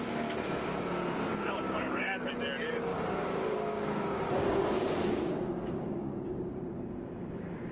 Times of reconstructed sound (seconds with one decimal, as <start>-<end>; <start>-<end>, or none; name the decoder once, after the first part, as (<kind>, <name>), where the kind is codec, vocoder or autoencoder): 0.6-2.3 (codec, DAC); 2.9-6.6